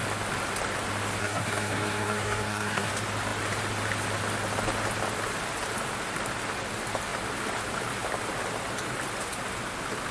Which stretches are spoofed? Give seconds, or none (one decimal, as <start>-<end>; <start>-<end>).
1.2-2.9